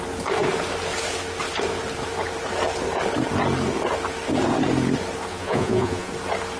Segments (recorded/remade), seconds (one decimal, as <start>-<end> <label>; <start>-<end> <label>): 0.0-5.3 recorded; 5.3-6.1 remade; 6.1-6.6 recorded